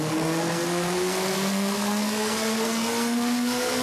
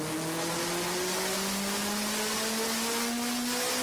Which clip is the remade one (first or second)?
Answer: first